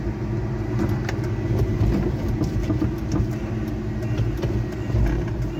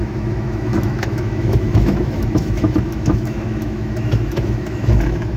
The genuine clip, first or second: first